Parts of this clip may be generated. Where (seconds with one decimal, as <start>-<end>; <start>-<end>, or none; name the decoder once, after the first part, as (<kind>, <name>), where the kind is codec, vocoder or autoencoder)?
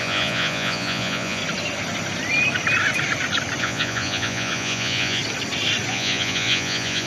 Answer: 0.0-1.4 (vocoder, Vocos); 3.6-5.2; 5.9-7.1